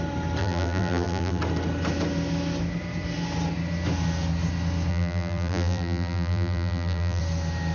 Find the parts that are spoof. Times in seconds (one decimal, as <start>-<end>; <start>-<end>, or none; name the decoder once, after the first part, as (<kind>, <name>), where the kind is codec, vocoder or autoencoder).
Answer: 0.4-1.4 (vocoder, BigVGAN v2); 4.9-7.2